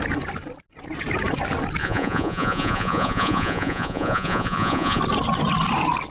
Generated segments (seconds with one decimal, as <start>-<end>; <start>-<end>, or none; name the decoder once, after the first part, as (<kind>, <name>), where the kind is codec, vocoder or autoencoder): 1.8-5.0 (vocoder, Vocos)